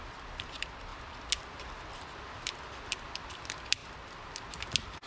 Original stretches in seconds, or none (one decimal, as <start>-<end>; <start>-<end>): 0.0-5.1